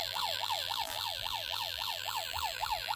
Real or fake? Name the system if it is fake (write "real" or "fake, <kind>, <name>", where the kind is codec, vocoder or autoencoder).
fake, vocoder, BigVGAN v2